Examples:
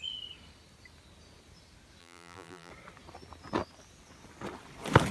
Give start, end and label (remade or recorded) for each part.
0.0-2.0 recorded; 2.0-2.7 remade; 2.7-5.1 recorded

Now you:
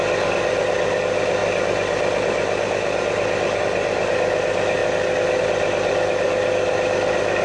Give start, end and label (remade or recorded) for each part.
0.0-7.4 recorded

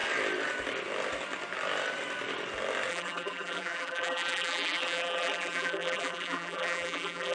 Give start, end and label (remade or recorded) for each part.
0.0-2.9 recorded; 2.9-7.3 remade